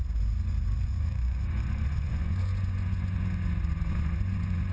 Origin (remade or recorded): remade